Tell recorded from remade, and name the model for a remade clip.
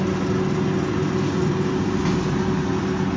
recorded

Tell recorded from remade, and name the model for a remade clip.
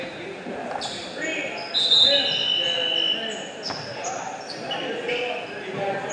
recorded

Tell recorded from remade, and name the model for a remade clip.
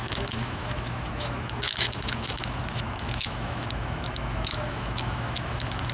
remade, autoencoder, DAC-VAE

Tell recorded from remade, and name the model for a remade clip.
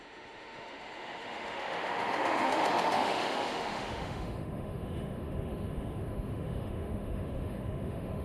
remade, autoencoder, DAC-VAE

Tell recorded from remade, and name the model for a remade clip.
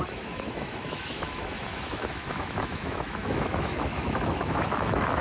remade, autoencoder, DAC-VAE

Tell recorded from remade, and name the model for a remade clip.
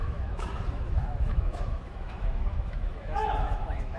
remade, autoencoder, DAC-VAE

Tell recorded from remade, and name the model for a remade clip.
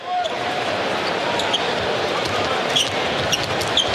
recorded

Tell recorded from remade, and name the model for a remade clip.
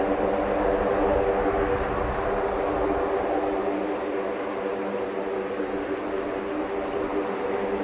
recorded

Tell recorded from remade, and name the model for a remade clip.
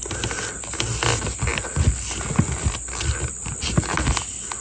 recorded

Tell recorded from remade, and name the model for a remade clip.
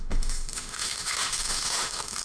remade, autoencoder, DAC-VAE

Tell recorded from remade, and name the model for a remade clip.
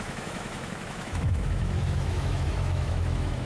remade, autoencoder, DAC-VAE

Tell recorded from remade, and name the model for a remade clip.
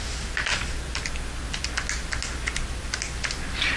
recorded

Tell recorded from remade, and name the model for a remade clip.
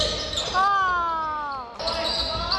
recorded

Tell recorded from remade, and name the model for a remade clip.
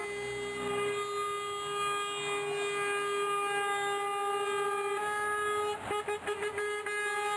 recorded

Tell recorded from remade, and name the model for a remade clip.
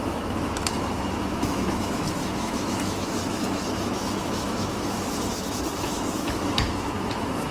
remade, autoencoder, DAC-VAE